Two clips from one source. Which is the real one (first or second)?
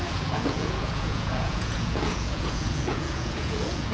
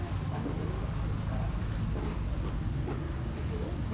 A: second